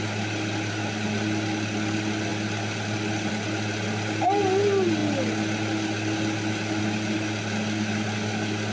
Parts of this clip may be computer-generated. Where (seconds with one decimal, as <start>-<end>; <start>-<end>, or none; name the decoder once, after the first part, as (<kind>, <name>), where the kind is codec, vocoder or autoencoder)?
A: none